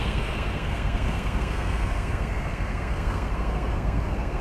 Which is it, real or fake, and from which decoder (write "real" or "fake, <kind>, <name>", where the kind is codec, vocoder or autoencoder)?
fake, codec, SNAC